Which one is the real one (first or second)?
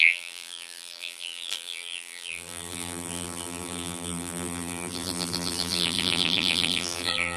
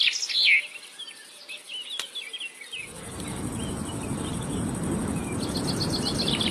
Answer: second